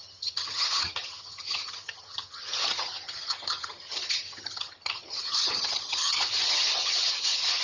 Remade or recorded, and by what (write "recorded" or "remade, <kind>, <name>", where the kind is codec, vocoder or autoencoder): remade, vocoder, HiFi-GAN